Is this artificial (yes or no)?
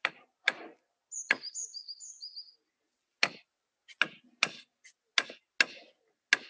no